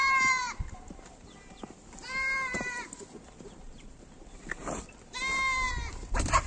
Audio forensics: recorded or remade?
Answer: remade